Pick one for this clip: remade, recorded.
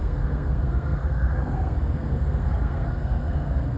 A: remade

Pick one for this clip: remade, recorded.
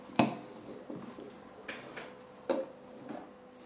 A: recorded